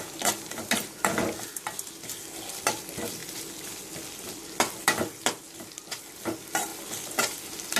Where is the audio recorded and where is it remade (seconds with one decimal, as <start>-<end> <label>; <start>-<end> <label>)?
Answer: 0.0-7.8 recorded